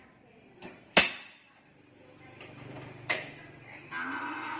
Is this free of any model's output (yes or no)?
no